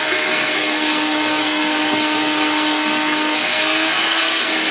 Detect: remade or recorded remade